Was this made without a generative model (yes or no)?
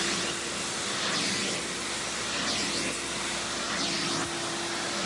yes